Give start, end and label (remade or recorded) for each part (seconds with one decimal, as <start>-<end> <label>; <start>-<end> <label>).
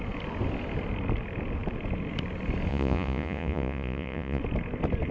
0.0-2.7 recorded; 2.7-4.4 remade; 4.4-5.1 recorded